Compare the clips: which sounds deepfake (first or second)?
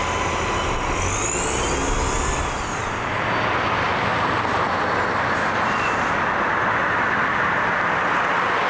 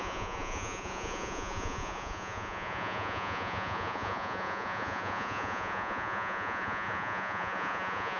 second